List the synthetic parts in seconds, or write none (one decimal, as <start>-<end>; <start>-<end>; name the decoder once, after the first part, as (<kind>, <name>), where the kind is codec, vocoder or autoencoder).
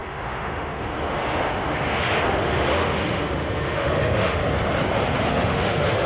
0.0-4.4 (autoencoder, DAC-VAE); 5.3-6.1